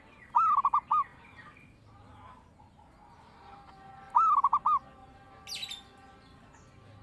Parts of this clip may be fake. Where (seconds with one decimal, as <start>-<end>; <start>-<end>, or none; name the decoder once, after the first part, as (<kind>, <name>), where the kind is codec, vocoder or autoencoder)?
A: none